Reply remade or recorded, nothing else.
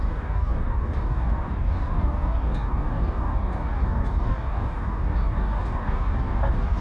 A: remade